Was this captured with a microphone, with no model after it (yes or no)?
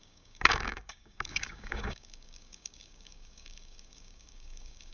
no